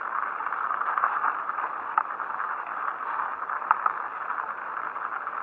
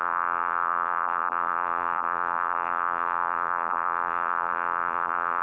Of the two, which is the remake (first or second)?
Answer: second